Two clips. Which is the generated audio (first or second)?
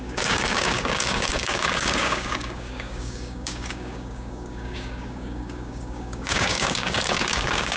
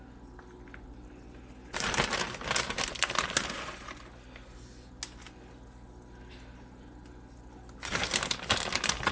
first